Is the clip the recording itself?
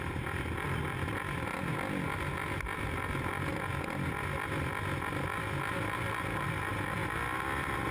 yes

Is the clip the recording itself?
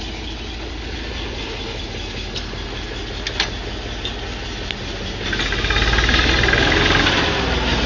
yes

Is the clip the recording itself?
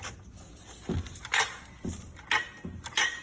yes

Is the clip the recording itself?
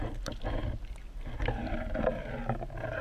yes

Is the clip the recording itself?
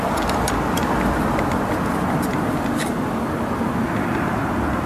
yes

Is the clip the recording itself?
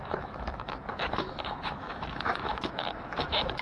no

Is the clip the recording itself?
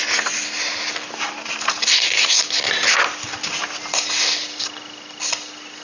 yes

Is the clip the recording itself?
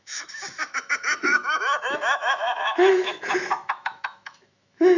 no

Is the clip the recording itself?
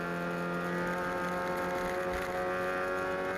yes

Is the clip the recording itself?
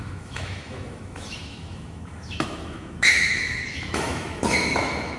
no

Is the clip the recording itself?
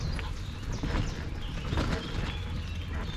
yes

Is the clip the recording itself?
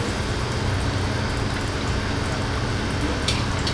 yes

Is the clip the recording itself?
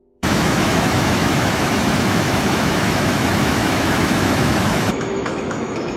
no